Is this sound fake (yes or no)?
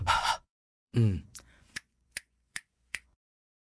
yes